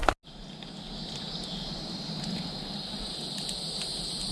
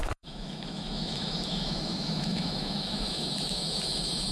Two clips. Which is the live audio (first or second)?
first